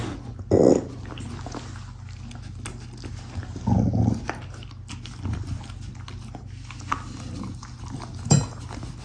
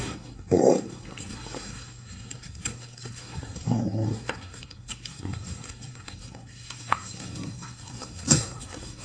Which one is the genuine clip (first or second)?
first